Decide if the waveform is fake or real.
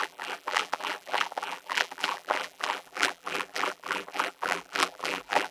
fake